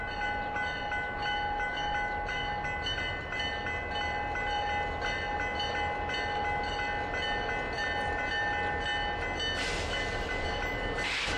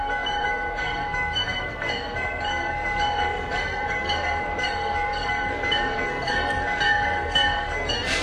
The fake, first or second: second